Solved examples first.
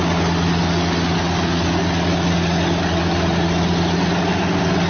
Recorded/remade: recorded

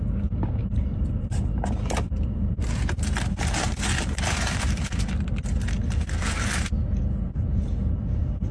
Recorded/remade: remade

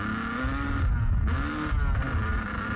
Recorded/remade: recorded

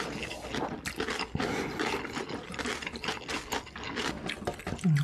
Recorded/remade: recorded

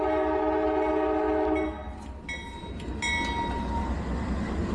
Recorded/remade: recorded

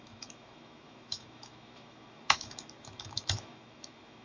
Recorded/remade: remade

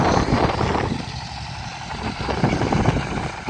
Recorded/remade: recorded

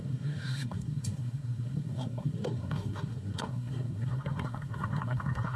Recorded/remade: remade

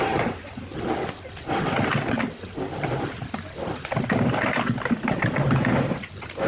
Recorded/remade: recorded